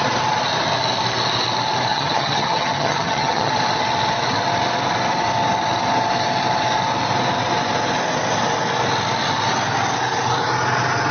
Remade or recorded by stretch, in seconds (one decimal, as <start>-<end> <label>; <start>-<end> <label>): 0.0-1.9 recorded; 1.9-3.5 remade; 3.5-11.1 recorded